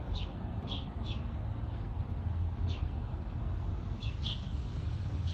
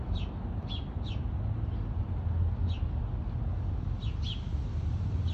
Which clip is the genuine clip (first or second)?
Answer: second